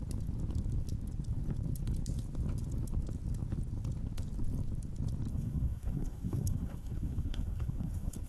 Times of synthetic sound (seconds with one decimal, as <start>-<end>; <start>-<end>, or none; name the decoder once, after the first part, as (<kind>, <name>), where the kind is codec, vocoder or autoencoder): 5.3-8.3 (codec, SNAC)